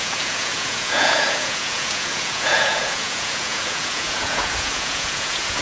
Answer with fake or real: fake